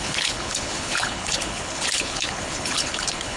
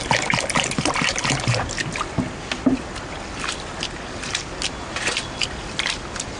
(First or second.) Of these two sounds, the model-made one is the first